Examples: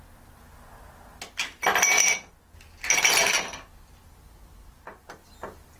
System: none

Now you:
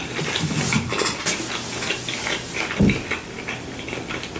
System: none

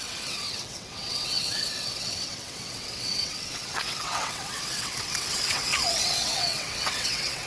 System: vocoder, WaveNeXt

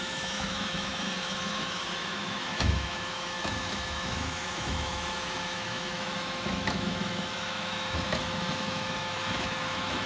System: autoencoder, DAC-VAE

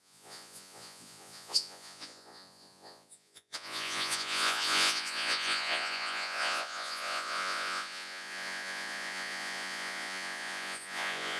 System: vocoder, Vocos